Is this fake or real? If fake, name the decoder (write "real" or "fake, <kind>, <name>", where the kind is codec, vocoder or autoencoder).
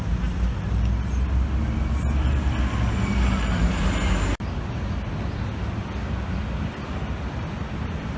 real